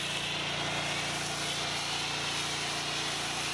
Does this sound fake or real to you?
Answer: real